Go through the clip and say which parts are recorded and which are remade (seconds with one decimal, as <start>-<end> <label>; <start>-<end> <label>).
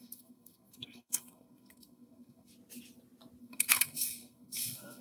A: 0.0-2.5 remade; 2.5-3.4 recorded; 3.4-5.0 remade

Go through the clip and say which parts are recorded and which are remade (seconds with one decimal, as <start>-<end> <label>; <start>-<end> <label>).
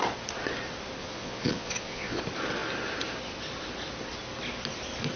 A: 0.0-1.0 recorded; 1.0-2.2 remade; 2.2-5.2 recorded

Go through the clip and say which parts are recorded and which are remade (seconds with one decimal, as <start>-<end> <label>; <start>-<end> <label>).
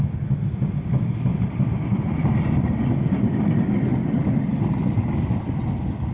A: 0.0-1.3 recorded; 1.3-5.0 remade; 5.0-6.1 recorded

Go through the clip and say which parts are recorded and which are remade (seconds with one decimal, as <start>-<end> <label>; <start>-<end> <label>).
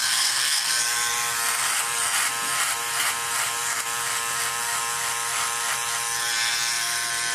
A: 0.0-0.7 remade; 0.7-7.3 recorded